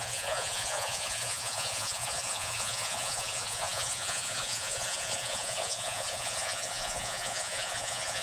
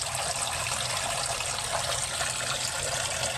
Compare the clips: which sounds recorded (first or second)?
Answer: second